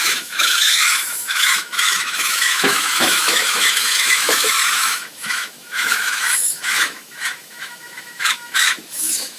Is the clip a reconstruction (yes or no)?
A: yes